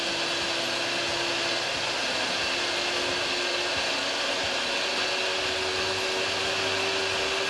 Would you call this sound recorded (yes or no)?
yes